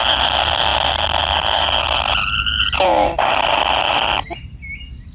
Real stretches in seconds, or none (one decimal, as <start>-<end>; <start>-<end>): 0.0-5.1